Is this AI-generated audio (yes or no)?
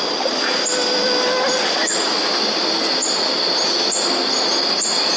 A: no